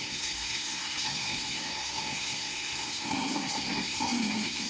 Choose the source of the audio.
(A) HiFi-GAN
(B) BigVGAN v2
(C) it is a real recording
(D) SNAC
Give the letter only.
D